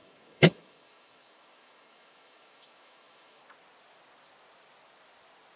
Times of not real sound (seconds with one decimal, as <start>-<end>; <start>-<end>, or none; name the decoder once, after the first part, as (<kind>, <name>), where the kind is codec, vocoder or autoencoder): 0.0-3.4 (autoencoder, DAC-VAE)